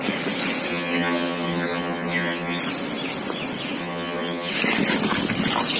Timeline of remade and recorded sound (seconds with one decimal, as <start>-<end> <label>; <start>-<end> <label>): 0.0-0.7 recorded; 0.7-2.6 remade; 2.6-3.8 recorded; 3.8-4.5 remade; 4.5-5.8 recorded